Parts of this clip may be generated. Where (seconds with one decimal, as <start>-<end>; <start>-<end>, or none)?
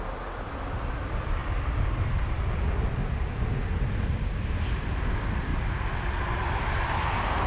0.0-1.4; 2.5-3.0; 4.7-5.5